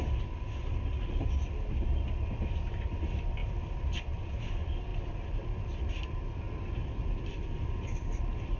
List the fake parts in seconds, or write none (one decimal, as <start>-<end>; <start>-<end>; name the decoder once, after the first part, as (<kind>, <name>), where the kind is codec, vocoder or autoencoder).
0.0-4.9 (vocoder, BigVGAN v2); 7.2-8.6